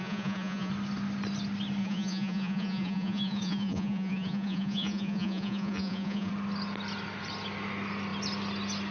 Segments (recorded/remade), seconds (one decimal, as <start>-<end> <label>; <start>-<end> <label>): 0.0-0.7 remade; 0.7-1.8 recorded; 1.8-6.3 remade; 6.3-8.9 recorded